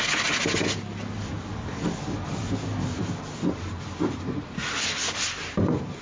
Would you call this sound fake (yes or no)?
no